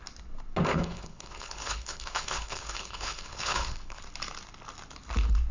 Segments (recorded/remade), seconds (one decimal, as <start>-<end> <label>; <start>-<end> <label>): 0.0-0.7 recorded; 0.7-4.0 remade; 4.0-5.5 recorded